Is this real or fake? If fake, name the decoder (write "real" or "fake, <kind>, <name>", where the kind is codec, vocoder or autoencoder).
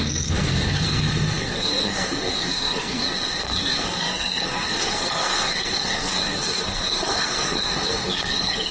fake, codec, SNAC